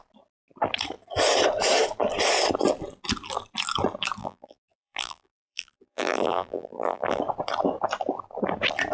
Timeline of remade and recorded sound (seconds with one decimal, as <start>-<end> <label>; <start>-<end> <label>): 0.0-4.2 recorded; 4.2-7.2 remade; 7.2-8.9 recorded